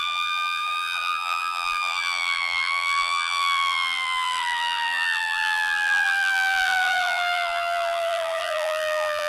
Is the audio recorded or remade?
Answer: remade